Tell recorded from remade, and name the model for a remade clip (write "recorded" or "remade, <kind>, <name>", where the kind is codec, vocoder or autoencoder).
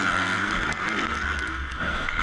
remade, codec, SNAC